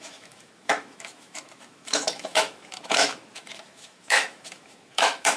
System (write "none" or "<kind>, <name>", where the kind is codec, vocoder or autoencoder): autoencoder, DAC-VAE